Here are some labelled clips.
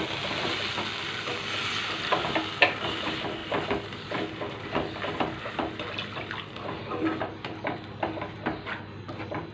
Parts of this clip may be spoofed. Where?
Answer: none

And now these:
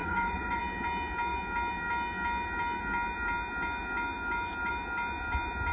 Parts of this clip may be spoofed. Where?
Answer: 0.0-0.6 (vocoder, Vocos)

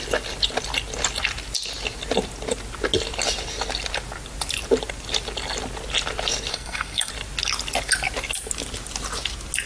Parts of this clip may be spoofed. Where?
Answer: 6.5-7.1 (codec, SNAC)

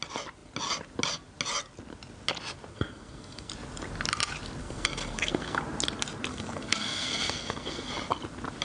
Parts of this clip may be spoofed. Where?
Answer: 2.7-3.5 (codec, SNAC); 4.6-5.6; 6.3-7.9